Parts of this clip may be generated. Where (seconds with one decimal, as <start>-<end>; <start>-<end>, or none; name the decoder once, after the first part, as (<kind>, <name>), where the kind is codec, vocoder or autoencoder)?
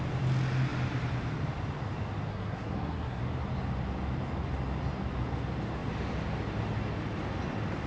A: 2.3-3.2 (codec, SNAC)